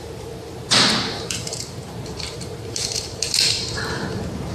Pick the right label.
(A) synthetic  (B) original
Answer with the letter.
A